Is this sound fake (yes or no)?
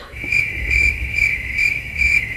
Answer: yes